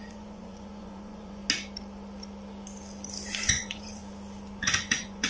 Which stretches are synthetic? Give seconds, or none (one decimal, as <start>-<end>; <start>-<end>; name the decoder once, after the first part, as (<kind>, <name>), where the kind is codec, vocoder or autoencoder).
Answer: 0.0-1.4 (vocoder, Vocos); 3.3-4.0; 4.6-5.3